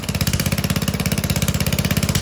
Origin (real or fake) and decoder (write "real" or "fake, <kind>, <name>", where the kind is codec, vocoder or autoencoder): real